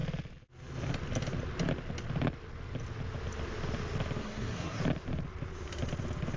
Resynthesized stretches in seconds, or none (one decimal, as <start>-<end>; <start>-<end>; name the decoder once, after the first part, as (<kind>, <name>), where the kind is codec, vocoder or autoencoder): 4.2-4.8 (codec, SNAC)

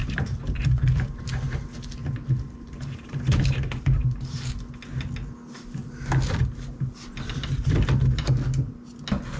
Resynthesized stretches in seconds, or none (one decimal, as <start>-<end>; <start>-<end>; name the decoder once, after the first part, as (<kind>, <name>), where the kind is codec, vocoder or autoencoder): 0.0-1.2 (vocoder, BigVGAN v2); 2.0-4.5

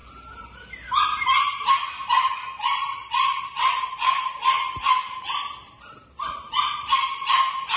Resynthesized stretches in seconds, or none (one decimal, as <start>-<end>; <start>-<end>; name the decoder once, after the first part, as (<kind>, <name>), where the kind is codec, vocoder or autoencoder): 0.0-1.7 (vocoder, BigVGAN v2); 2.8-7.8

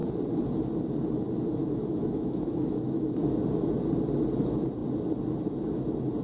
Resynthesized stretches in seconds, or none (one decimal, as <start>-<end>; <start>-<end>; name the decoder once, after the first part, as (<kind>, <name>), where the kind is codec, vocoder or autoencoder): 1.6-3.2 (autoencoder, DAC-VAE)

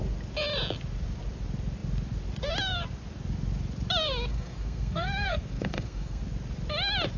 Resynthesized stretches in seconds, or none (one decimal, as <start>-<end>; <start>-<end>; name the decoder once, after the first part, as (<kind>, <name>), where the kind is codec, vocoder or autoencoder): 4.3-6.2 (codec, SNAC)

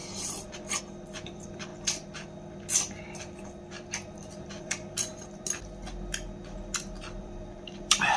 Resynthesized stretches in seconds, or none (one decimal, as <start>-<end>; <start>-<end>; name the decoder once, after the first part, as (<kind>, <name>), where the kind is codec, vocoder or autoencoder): 0.0-1.7 (vocoder, BigVGAN v2); 4.6-5.1; 7.2-8.2